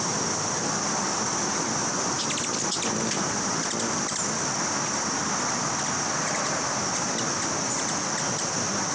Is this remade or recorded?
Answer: recorded